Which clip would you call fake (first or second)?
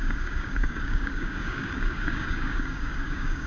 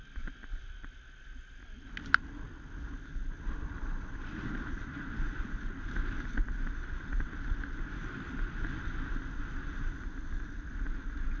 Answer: first